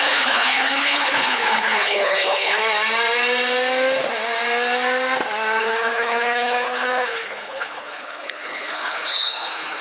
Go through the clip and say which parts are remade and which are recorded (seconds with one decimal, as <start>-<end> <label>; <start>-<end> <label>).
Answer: 0.0-2.6 remade; 2.6-5.6 recorded; 5.6-9.8 remade